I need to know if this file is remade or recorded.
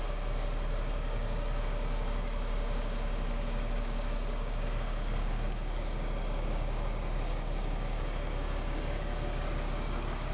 remade